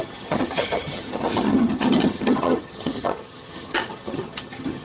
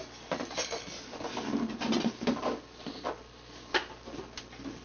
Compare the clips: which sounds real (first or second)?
second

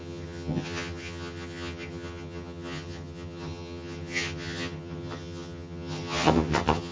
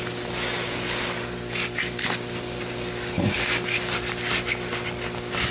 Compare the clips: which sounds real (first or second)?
second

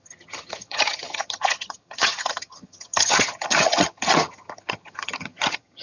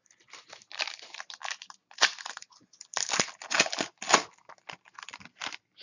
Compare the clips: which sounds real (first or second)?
second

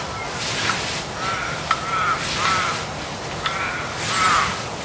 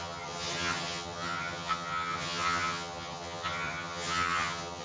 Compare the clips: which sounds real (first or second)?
first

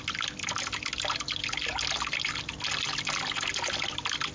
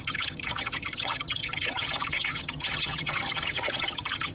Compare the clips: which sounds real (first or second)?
first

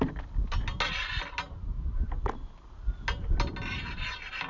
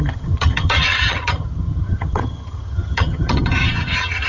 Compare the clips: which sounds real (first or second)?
first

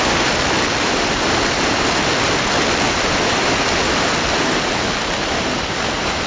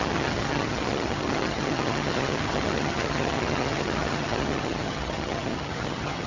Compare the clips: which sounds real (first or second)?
first